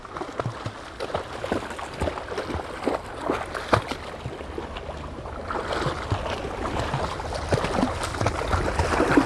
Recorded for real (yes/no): yes